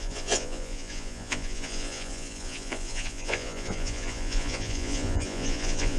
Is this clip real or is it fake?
fake